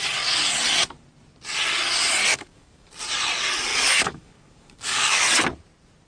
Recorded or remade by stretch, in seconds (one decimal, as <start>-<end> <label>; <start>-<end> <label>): 0.0-2.3 recorded; 2.3-2.9 remade; 2.9-3.7 recorded; 3.7-5.2 remade; 5.2-6.1 recorded